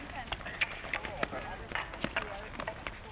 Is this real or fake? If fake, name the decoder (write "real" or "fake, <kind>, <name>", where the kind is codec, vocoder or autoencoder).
real